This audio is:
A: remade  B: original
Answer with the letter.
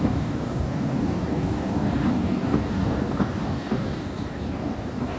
A